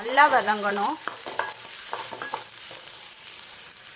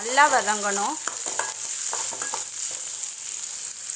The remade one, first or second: first